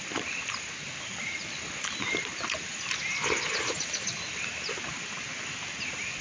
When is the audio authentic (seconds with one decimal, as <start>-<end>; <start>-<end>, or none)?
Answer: 0.0-6.2